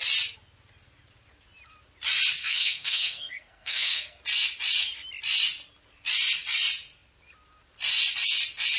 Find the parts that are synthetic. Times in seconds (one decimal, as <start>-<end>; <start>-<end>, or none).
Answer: 2.4-4.2